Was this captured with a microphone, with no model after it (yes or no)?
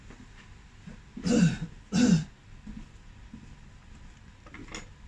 yes